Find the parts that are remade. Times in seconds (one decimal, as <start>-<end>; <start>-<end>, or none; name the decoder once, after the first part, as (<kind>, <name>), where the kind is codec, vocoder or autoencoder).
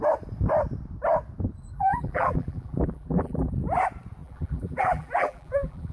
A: 1.7-3.5 (vocoder, BigVGAN v2); 4.2-5.9